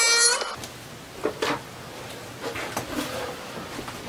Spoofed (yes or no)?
no